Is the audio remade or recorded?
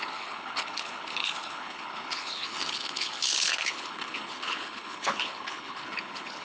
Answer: remade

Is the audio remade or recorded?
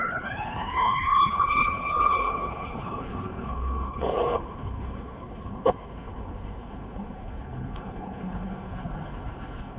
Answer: remade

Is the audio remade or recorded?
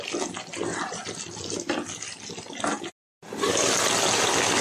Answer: recorded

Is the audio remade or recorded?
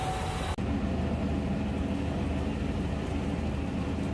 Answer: recorded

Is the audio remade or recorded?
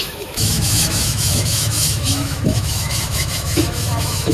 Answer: remade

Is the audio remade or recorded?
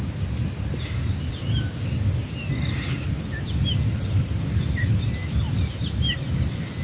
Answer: recorded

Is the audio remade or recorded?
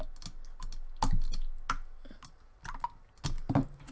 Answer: recorded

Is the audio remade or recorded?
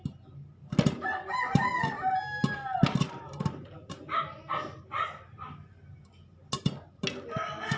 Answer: recorded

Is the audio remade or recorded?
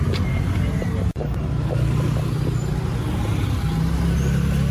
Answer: recorded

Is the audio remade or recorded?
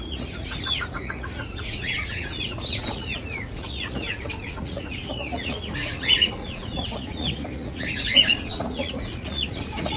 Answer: remade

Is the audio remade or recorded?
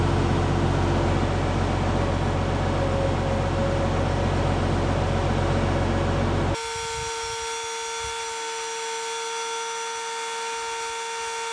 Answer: recorded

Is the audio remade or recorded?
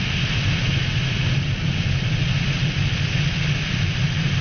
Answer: recorded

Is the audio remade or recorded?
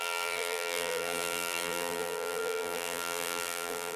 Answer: remade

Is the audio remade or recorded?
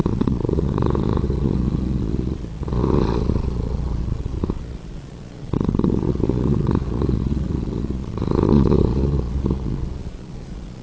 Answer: remade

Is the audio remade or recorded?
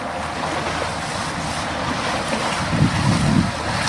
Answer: recorded